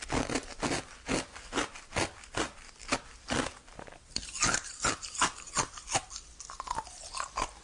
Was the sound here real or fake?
real